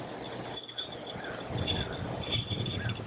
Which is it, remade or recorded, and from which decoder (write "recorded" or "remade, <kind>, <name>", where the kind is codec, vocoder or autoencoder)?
recorded